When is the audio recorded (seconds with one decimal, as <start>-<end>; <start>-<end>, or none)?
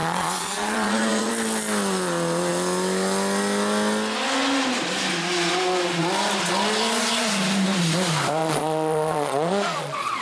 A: 1.3-8.4